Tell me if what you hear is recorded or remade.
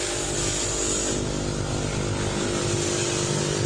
recorded